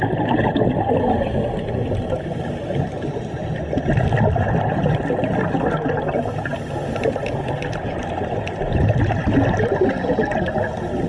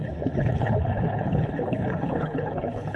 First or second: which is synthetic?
second